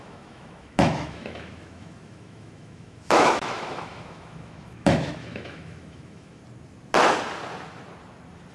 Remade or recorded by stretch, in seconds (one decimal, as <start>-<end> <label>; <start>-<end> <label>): 0.0-6.4 remade; 6.4-8.5 recorded